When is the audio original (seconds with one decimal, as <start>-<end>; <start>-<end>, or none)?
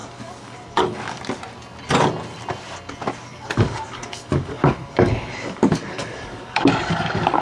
1.2-3.3